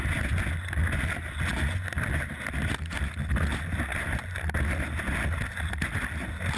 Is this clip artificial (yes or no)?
no